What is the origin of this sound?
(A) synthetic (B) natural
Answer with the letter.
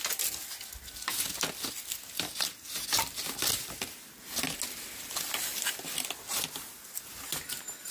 B